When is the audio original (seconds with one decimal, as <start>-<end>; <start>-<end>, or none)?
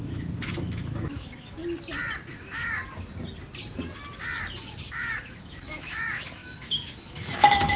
1.6-2.3; 2.8-4.9